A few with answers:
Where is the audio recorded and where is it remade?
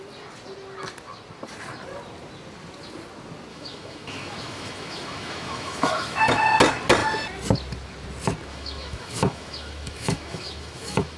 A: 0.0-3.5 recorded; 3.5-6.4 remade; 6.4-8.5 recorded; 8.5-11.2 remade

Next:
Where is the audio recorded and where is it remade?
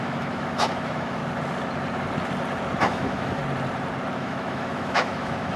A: 0.0-1.2 remade; 1.2-2.8 recorded; 2.8-3.4 remade; 3.4-4.1 recorded; 4.1-5.6 remade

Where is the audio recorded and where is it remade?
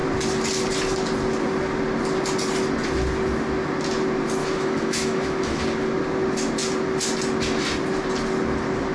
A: 0.0-4.4 recorded; 4.4-5.6 remade; 5.6-8.9 recorded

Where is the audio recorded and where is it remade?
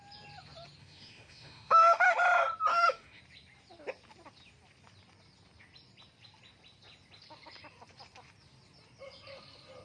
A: 0.0-0.8 recorded; 0.8-2.2 remade; 2.2-2.7 recorded; 2.7-3.2 remade; 3.2-9.8 recorded